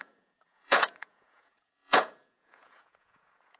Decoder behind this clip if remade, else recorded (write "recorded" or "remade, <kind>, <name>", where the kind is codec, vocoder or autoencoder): remade, vocoder, Vocos